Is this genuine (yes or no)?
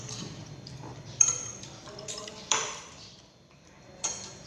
no